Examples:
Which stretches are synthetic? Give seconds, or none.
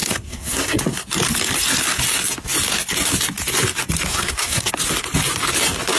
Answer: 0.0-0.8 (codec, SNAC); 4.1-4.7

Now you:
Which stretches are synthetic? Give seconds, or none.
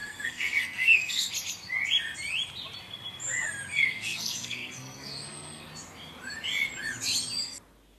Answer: 0.0-1.3 (codec, SNAC); 3.7-5.7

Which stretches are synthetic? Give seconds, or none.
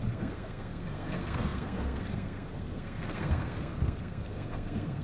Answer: 0.0-5.0 (codec, SNAC)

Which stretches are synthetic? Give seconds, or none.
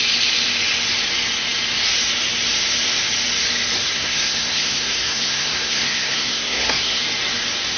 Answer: 3.8-7.0 (codec, SNAC)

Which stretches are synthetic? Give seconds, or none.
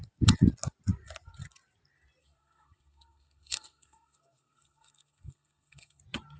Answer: 2.2-6.0 (codec, SNAC)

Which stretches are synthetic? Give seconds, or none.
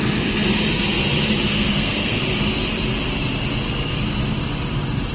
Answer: 1.5-2.2 (codec, SNAC)